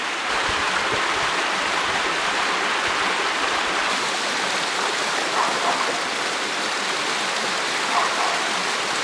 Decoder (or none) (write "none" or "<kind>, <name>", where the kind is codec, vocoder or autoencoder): none